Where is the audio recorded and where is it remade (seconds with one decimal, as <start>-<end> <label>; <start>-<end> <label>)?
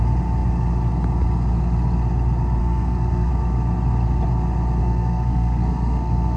0.0-2.6 recorded; 2.6-3.3 remade; 3.3-4.8 recorded; 4.8-6.4 remade